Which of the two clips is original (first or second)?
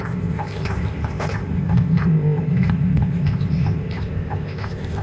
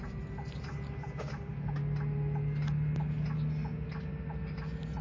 second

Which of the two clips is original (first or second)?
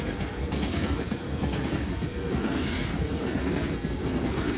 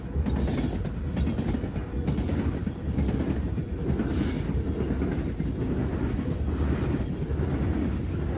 second